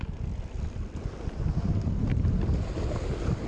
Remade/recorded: recorded